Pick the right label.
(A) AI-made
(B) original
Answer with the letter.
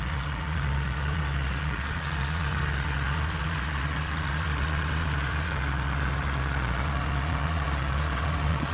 A